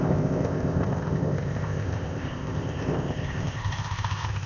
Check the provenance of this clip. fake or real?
fake